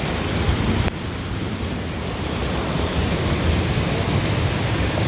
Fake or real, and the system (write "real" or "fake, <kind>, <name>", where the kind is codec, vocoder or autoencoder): fake, vocoder, BigVGAN v2